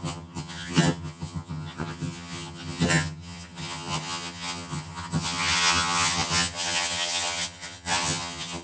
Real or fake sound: fake